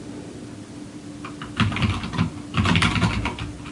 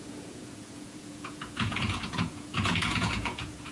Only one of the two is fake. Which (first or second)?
second